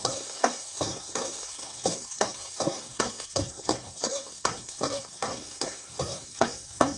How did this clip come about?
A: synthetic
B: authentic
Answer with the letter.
A